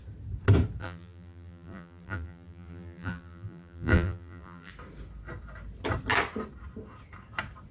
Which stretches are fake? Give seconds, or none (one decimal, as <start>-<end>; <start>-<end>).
0.8-4.7